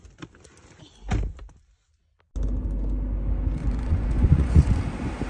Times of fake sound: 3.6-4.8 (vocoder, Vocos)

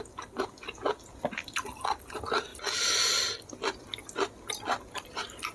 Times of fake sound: none

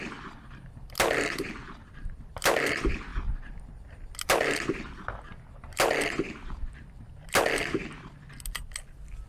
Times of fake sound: none

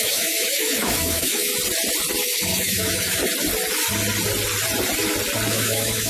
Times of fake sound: 0.0-1.5 (autoencoder, DAC-VAE); 2.2-3.2; 5.5-6.1

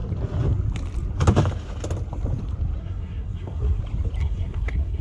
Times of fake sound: 2.8-3.8 (codec, SNAC); 4.2-5.0

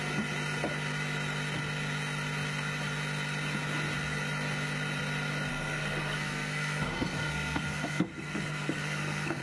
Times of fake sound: 5.5-9.4 (codec, SNAC)

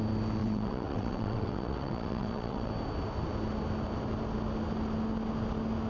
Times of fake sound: 0.4-2.7 (vocoder, WaveNeXt)

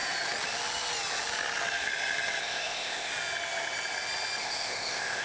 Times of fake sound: 2.4-3.1 (codec, ZipCodec); 4.4-5.2